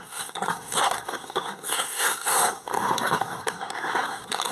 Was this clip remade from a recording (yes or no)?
yes